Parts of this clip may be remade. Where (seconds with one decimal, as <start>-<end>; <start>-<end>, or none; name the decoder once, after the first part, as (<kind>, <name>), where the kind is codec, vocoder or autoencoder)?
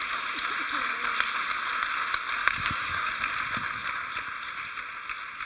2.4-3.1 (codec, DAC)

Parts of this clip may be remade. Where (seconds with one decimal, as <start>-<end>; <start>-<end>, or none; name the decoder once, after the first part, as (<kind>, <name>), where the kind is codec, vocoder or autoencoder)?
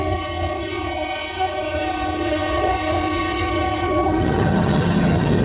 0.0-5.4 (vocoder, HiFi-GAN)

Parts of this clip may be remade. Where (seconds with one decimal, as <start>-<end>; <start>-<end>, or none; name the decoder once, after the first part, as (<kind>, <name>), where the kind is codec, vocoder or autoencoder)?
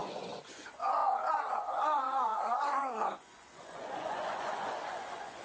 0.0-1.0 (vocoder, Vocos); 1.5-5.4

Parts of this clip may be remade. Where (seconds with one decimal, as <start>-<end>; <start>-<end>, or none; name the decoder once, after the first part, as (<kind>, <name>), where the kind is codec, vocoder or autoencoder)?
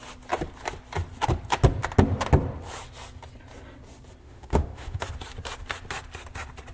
4.2-5.0 (autoencoder, DAC-VAE)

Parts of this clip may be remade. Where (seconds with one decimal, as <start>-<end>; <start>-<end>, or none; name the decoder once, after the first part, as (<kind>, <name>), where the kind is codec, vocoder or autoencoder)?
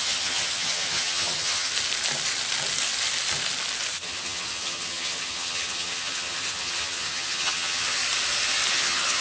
0.0-1.7 (vocoder, HiFi-GAN); 3.9-8.0; 8.7-9.2